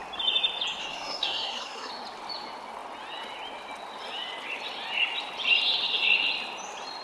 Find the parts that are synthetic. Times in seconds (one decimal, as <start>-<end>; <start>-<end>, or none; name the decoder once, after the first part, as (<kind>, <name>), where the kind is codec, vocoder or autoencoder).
0.8-1.9 (codec, SNAC)